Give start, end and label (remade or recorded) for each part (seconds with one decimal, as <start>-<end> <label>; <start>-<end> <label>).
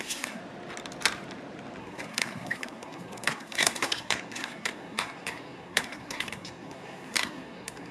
0.0-0.4 remade; 0.4-1.8 recorded; 1.8-7.9 remade